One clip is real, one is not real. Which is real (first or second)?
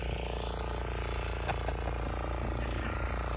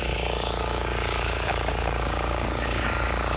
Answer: first